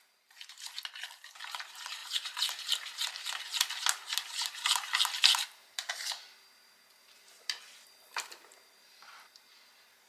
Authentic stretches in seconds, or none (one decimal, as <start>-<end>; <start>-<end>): 0.0-2.0; 3.2-5.6; 6.2-10.1